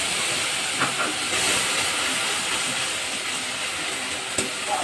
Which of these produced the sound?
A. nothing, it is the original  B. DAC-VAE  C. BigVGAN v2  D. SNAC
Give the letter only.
A